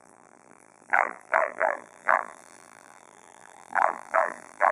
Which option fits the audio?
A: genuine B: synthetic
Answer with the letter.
B